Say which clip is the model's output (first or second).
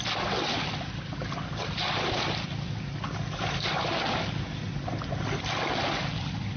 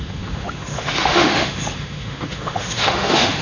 second